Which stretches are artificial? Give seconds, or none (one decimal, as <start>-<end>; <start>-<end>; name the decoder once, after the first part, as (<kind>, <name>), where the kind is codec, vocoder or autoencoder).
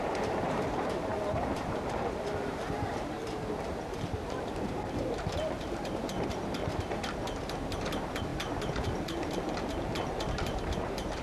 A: 0.0-6.6 (vocoder, BigVGAN v2); 7.8-11.2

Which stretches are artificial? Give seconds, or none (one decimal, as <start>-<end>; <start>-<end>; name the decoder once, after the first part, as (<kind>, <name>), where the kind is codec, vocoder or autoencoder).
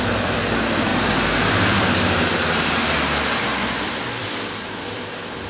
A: 0.0-0.9 (vocoder, BigVGAN v2); 1.5-3.5; 4.2-5.5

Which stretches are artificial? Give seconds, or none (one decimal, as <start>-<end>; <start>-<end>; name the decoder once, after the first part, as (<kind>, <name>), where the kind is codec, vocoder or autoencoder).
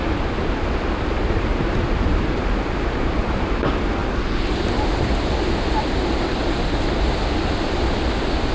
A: 1.5-2.5 (vocoder, BigVGAN v2)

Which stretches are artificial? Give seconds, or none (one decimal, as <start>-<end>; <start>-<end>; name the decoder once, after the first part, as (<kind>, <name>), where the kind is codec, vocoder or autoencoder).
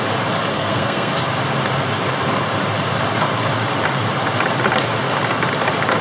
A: 0.5-1.1 (codec, SNAC)